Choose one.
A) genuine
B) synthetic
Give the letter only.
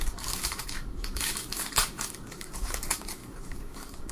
B